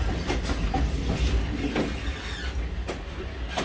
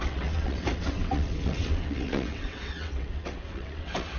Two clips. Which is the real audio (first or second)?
first